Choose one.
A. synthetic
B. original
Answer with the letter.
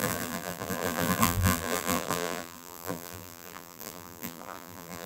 A